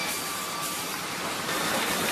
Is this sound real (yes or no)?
no